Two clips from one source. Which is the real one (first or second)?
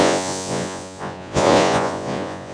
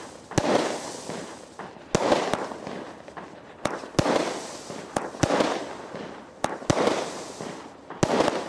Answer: second